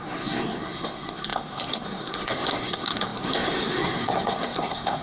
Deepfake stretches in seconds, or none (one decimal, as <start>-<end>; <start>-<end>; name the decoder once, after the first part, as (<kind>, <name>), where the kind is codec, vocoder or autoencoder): 0.0-5.0 (codec, SNAC)